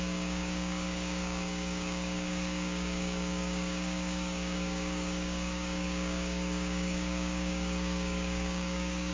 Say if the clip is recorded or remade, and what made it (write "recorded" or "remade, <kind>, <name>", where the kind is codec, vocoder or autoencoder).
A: remade, codec, DAC